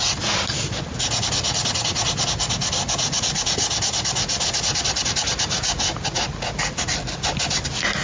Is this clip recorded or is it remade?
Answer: recorded